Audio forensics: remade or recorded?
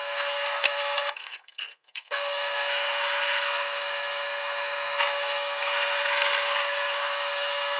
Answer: remade